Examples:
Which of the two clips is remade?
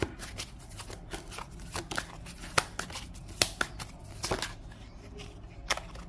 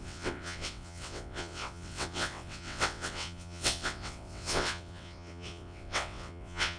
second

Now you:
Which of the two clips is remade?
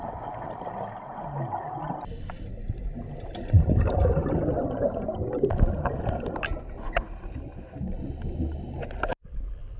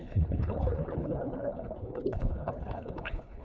second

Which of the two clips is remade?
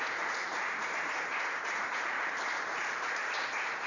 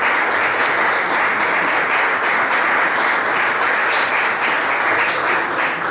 first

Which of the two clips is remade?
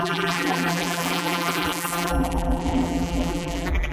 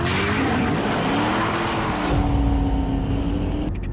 first